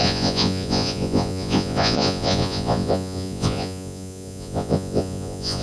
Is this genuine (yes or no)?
no